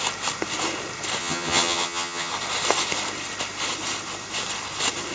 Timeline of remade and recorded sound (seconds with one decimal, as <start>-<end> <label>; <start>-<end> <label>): 0.0-1.2 recorded; 1.2-2.3 remade; 2.3-5.1 recorded